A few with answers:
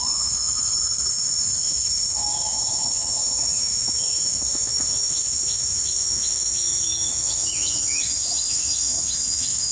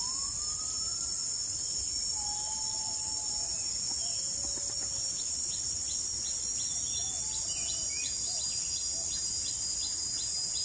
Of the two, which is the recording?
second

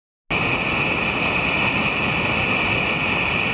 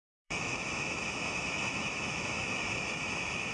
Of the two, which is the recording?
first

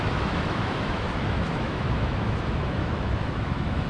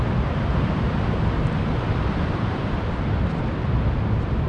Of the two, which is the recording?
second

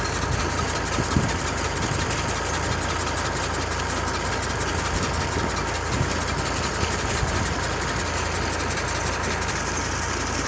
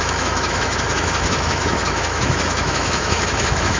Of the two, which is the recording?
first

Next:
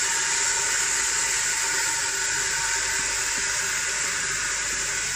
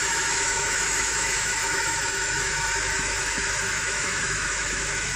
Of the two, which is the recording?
first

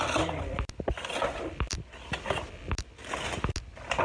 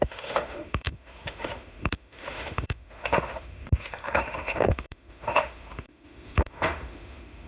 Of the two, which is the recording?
first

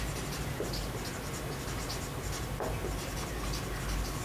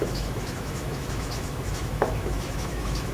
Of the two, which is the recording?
first